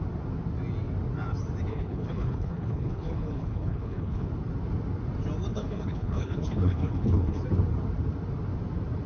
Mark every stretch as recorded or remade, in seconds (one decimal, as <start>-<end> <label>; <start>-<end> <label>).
0.0-1.7 recorded; 1.7-4.3 remade; 4.3-5.5 recorded; 5.5-7.4 remade; 7.4-9.1 recorded